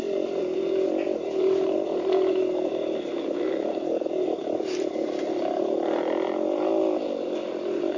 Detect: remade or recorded recorded